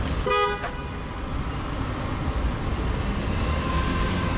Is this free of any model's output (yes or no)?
yes